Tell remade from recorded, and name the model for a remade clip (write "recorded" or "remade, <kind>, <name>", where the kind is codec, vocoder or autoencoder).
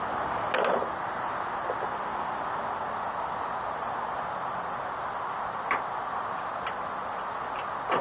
recorded